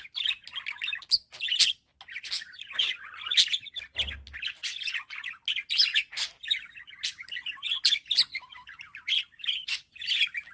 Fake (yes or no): no